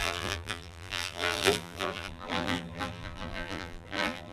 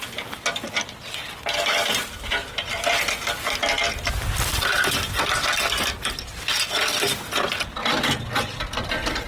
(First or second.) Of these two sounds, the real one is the second